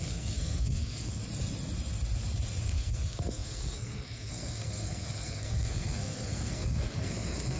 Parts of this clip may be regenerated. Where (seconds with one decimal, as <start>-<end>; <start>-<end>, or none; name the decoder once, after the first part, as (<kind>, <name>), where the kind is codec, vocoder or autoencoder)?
0.0-1.2 (codec, SNAC); 2.6-7.6